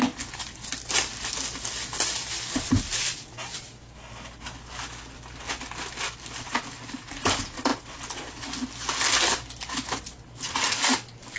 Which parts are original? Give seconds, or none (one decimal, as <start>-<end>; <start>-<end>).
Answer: 0.0-11.4